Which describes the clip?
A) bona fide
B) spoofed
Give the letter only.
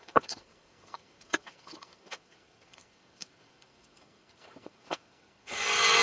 B